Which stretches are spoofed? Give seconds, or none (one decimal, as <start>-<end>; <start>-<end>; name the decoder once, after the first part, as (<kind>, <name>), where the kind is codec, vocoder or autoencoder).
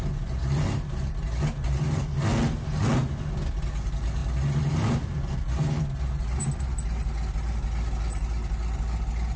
none